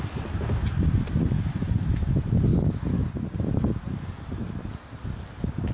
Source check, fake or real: real